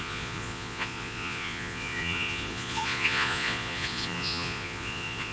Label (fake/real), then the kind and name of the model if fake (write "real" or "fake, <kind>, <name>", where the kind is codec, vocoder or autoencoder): fake, vocoder, Vocos